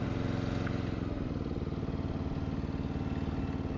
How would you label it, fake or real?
real